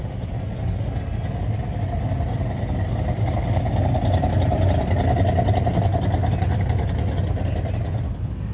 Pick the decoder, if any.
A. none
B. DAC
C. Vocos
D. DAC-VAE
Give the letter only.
A